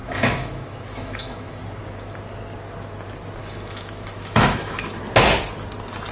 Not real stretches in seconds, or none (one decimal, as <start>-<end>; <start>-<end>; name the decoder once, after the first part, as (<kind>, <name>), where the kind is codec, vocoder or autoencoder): 0.0-1.6 (autoencoder, DAC-VAE); 3.4-5.0